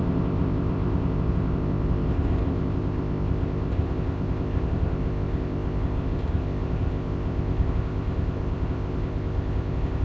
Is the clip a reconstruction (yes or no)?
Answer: yes